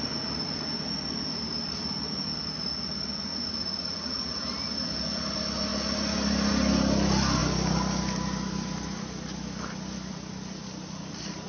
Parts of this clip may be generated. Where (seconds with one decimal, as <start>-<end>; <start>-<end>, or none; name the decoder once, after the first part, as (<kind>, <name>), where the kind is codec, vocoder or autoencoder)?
3.3-4.3 (vocoder, Vocos)